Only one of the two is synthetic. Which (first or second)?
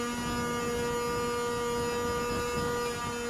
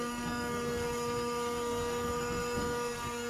second